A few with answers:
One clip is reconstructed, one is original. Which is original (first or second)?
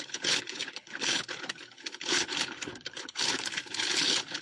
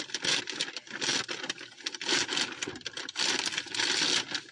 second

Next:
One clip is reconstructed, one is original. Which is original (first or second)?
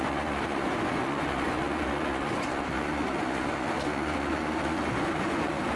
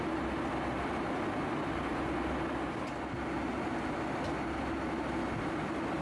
second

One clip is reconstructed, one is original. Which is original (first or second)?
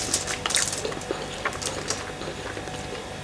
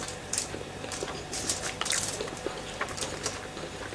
first